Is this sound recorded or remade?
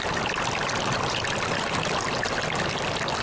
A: recorded